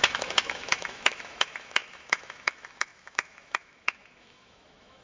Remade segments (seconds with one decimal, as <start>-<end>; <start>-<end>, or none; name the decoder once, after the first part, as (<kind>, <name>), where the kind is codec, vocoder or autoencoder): 0.0-5.0 (autoencoder, DAC-VAE)

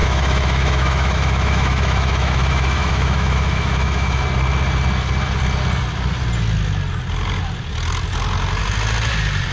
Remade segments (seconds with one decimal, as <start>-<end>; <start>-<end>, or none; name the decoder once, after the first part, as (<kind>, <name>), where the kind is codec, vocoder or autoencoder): 0.0-4.2 (autoencoder, DAC-VAE)

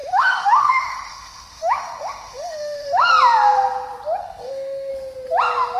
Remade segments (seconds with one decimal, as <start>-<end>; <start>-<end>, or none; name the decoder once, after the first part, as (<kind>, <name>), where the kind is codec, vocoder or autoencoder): 0.0-3.1 (autoencoder, DAC-VAE); 4.2-4.9

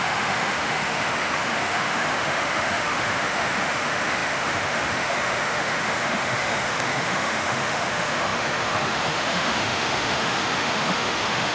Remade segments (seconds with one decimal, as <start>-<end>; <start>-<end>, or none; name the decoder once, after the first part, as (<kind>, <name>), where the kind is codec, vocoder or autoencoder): 0.0-11.5 (autoencoder, DAC-VAE)